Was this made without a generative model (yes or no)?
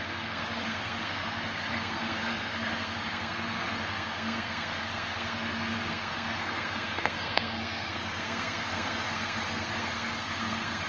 no